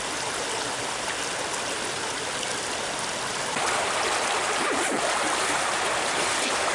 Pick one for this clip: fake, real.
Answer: fake